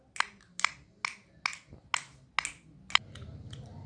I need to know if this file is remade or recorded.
recorded